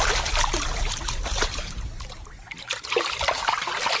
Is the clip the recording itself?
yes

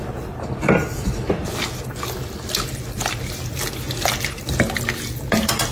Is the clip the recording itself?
yes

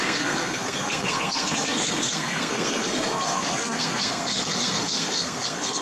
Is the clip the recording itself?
no